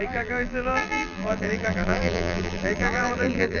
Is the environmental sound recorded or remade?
remade